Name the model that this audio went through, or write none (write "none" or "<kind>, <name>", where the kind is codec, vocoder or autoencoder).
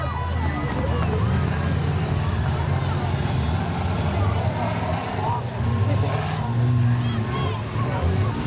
none